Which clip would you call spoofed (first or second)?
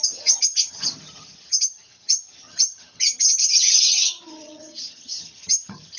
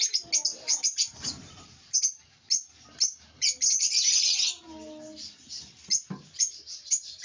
first